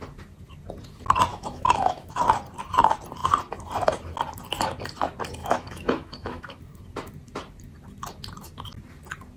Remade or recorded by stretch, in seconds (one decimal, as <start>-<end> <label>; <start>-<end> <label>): 0.0-1.3 recorded; 1.3-2.2 remade; 2.2-5.4 recorded; 5.4-6.6 remade; 6.6-9.4 recorded